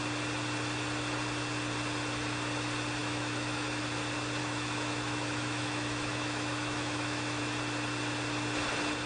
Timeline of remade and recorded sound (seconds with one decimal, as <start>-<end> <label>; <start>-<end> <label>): 0.0-3.0 recorded; 3.0-3.8 remade; 3.8-4.4 recorded; 4.4-7.4 remade; 7.4-9.1 recorded